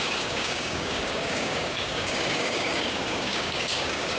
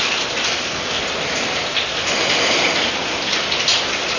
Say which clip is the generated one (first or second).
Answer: first